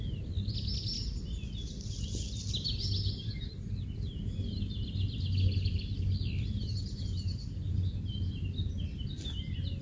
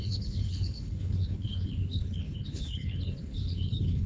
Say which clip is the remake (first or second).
second